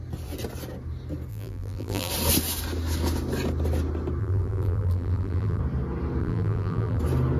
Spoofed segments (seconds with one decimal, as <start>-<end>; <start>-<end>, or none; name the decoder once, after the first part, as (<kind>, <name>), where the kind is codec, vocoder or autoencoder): 1.3-2.1 (vocoder, BigVGAN v2); 4.2-5.6; 6.2-7.0